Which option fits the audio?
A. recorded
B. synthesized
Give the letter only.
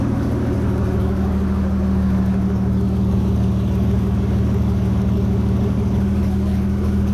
B